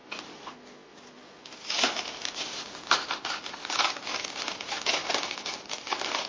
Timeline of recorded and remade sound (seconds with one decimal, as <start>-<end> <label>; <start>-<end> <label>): 0.0-0.5 remade; 0.5-5.0 recorded; 5.0-5.7 remade; 5.7-6.3 recorded